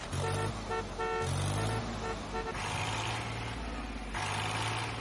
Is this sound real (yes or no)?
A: yes